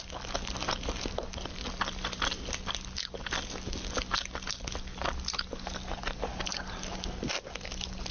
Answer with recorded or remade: recorded